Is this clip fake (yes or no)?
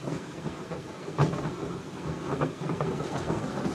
yes